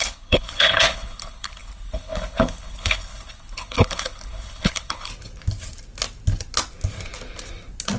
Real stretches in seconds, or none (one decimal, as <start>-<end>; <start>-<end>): 5.1-8.0